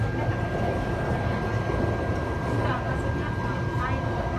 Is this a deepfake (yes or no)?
no